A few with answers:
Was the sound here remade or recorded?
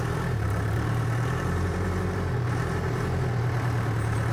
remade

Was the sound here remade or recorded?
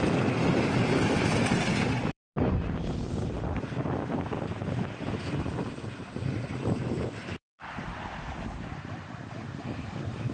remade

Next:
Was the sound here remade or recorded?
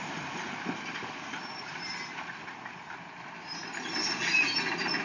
remade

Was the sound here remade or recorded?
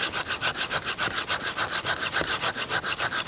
remade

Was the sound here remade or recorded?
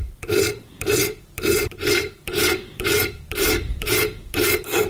remade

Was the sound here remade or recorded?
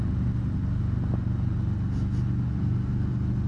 recorded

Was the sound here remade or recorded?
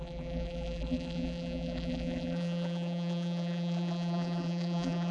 remade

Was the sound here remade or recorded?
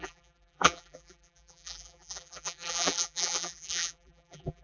remade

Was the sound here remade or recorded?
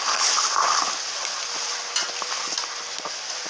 recorded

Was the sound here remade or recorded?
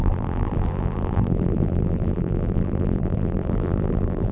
remade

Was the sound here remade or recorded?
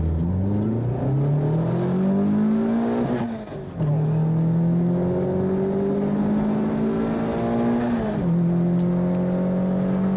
recorded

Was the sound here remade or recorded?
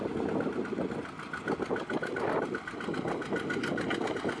recorded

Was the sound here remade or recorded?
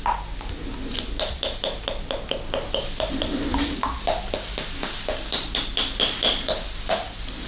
recorded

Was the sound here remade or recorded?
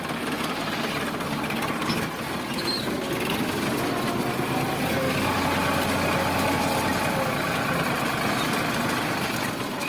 recorded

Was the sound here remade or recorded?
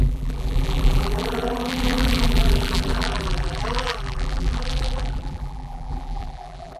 remade